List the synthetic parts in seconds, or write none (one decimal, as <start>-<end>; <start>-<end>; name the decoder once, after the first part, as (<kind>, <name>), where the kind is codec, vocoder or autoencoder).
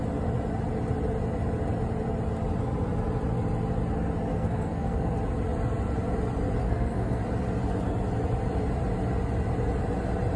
4.3-5.1 (codec, SNAC); 6.6-7.2